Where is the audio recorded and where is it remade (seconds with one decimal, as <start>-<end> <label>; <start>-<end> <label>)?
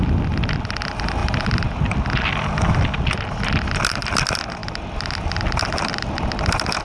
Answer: 0.0-6.8 recorded